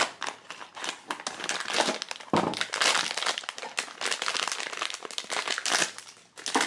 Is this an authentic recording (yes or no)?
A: yes